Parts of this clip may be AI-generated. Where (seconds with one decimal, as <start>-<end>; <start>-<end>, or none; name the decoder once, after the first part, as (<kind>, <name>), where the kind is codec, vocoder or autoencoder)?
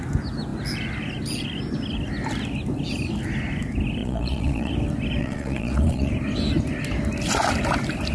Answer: 4.0-4.7 (vocoder, Vocos); 5.2-6.1